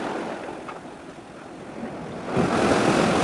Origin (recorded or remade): recorded